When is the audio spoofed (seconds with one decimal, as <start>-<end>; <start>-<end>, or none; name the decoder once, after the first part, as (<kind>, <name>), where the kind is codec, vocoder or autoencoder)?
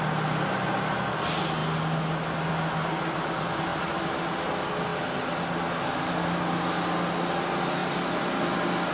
none